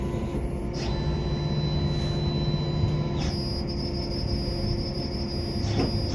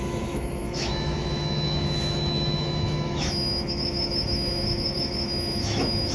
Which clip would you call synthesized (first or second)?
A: second